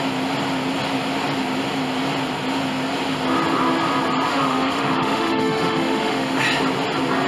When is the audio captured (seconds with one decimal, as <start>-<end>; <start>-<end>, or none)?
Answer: 0.0-4.3; 6.4-7.3